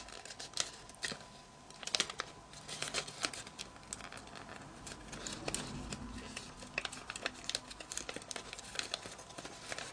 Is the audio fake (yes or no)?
no